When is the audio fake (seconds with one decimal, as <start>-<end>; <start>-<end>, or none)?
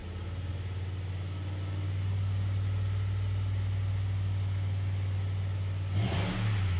none